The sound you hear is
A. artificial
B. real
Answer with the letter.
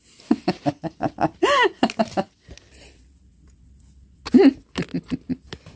B